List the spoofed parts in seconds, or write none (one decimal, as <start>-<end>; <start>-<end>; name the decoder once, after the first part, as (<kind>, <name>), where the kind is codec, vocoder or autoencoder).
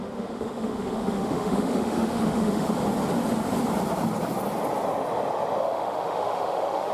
0.0-2.7 (autoencoder, DAC-VAE); 5.6-6.9